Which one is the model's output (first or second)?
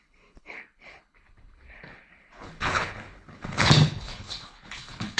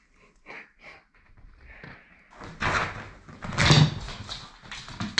first